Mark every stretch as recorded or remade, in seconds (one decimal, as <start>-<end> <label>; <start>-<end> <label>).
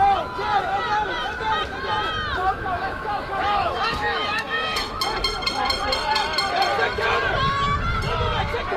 0.0-2.4 recorded; 2.4-5.0 remade; 5.0-8.8 recorded